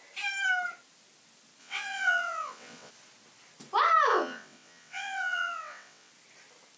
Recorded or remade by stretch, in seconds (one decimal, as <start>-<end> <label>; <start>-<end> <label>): 0.0-1.6 recorded; 1.6-2.9 remade; 2.9-4.1 recorded; 4.1-6.1 remade; 6.1-6.8 recorded